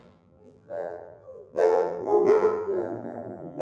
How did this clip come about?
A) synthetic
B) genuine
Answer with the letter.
A